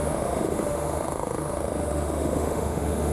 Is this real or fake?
fake